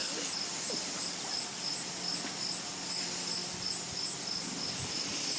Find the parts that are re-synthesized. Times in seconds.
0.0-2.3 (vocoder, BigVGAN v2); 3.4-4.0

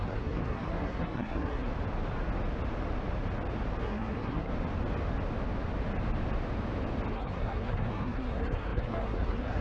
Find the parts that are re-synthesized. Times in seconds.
0.0-1.7 (codec, SNAC); 3.8-4.5; 7.1-9.6

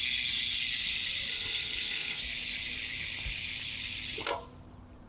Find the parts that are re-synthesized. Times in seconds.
1.3-2.2 (codec, HILCodec)

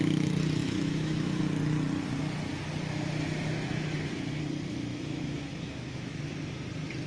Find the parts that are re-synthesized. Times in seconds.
0.6-1.4 (autoencoder, DAC-VAE); 4.9-6.2

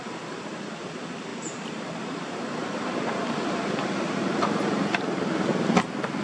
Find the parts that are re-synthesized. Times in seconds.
1.3-5.0 (vocoder, BigVGAN v2)

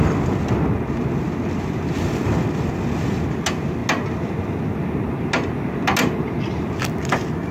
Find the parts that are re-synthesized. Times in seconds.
none

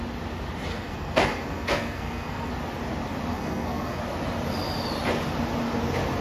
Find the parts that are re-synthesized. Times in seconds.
0.7-2.5 (codec, SNAC); 3.3-4.0

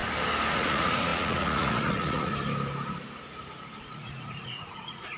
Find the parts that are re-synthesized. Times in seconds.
0.5-2.3 (vocoder, Vocos); 3.8-5.2